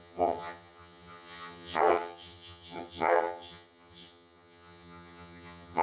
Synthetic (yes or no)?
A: yes